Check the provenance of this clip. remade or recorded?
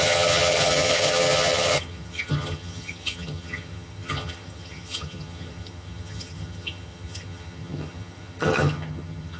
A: remade